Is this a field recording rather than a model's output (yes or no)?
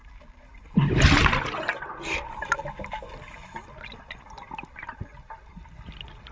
yes